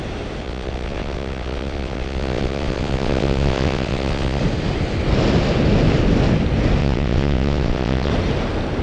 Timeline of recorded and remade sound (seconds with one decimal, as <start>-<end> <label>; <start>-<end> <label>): 0.0-0.4 recorded; 0.4-4.4 remade; 4.4-6.8 recorded; 6.8-8.1 remade; 8.1-8.8 recorded